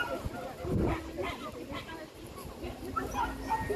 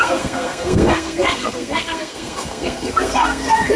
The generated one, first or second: second